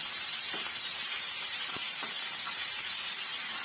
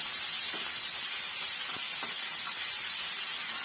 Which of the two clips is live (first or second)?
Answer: second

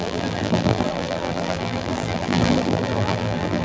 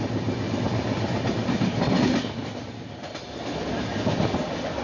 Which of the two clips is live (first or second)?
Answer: second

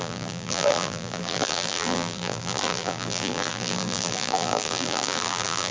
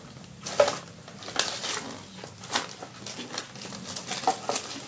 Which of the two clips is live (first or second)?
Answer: second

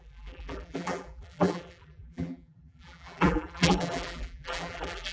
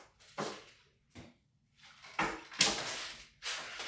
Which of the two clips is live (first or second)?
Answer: second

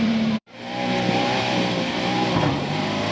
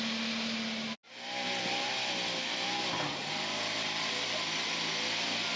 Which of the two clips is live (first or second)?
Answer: second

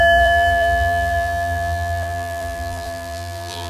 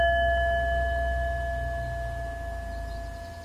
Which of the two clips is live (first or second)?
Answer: second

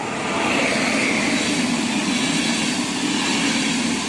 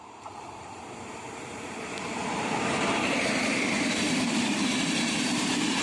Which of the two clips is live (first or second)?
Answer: first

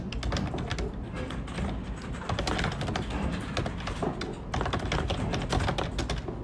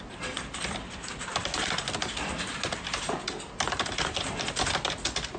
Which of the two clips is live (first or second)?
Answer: first